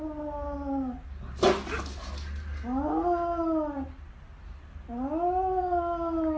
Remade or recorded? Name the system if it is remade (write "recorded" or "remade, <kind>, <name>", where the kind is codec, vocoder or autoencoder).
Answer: recorded